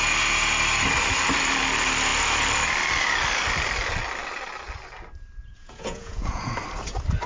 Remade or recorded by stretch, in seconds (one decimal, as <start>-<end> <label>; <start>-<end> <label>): 0.0-5.4 recorded; 5.4-6.5 remade; 6.5-7.3 recorded